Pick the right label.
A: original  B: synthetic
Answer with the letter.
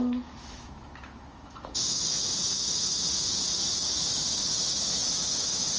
B